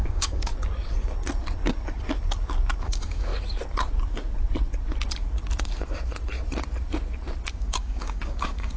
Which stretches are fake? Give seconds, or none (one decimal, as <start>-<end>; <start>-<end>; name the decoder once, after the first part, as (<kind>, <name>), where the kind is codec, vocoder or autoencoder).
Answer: 0.0-0.5 (codec, DAC); 2.8-3.3; 7.5-8.8